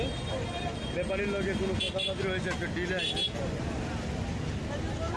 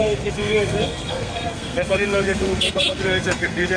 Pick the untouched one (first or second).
first